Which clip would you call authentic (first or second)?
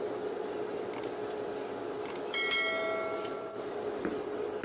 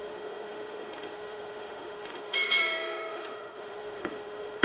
first